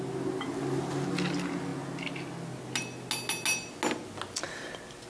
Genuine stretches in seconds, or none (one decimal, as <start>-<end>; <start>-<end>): 0.0-5.1